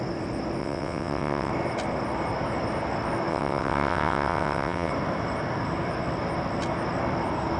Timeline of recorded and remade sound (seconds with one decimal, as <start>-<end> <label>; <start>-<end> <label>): 0.0-0.6 recorded; 0.6-1.5 remade; 1.5-3.3 recorded; 3.3-4.9 remade; 4.9-7.6 recorded